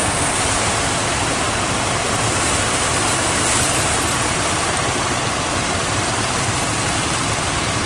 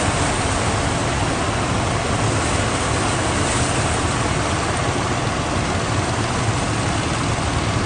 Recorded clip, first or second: second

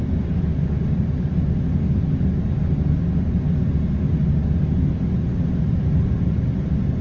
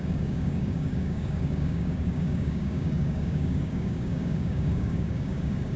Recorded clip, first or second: first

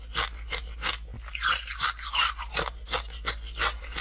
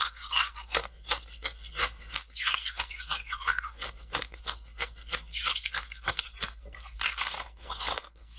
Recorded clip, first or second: first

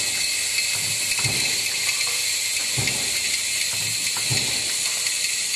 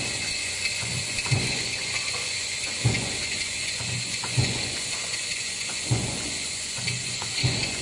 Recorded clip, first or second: first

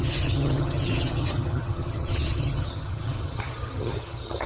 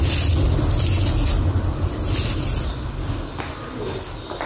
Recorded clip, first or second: second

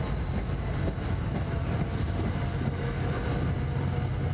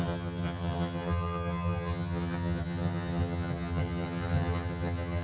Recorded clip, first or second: first